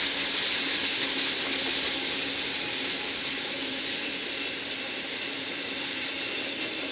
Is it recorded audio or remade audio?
recorded